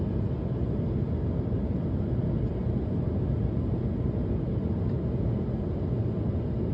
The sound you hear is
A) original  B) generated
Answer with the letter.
A